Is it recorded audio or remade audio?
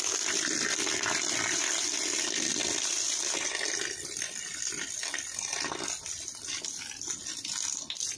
recorded